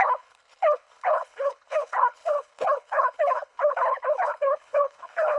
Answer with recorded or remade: remade